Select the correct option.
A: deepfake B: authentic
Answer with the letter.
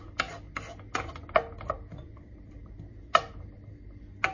B